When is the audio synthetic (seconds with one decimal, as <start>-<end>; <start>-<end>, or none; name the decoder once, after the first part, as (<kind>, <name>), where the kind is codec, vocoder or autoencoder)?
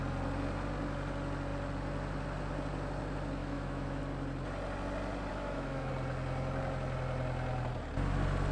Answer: 3.4-4.0 (autoencoder, DAC-VAE); 5.3-5.9